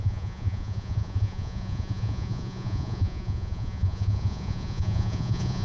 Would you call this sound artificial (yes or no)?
yes